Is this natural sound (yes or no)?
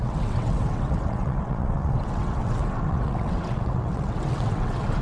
no